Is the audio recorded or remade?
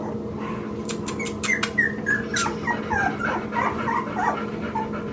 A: recorded